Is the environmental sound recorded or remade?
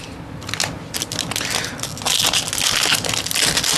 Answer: recorded